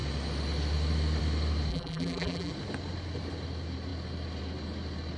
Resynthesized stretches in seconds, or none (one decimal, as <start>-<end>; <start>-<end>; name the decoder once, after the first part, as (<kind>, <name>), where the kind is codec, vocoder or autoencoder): 1.7-2.5 (vocoder, BigVGAN v2)